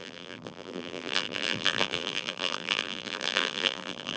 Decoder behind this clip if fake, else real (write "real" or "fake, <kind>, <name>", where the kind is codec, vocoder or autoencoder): fake, vocoder, BigVGAN v2